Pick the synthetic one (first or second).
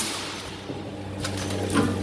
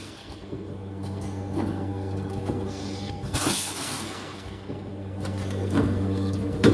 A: second